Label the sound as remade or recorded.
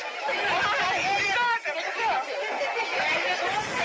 recorded